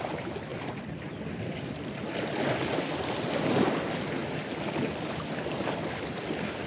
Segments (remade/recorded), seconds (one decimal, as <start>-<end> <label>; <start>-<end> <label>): 0.0-6.7 recorded